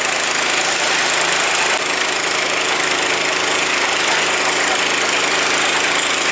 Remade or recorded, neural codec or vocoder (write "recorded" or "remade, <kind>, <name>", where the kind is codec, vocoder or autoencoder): recorded